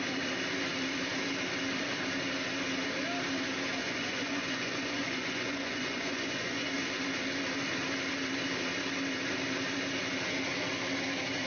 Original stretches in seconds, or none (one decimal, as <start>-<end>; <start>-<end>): 0.0-3.8; 6.7-11.5